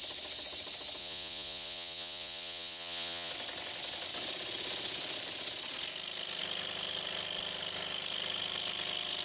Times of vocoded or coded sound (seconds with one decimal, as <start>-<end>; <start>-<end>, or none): 1.0-3.3